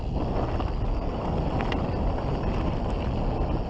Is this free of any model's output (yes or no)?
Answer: yes